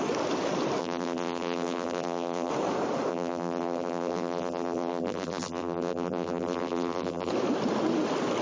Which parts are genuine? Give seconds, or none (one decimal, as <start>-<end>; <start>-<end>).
0.0-0.8; 2.5-3.1; 7.3-8.4